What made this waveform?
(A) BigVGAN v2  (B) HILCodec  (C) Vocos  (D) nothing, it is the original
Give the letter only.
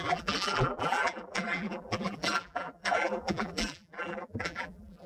A